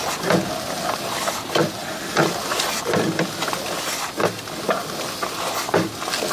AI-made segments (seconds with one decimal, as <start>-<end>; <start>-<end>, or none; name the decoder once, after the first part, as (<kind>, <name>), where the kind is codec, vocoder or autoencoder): none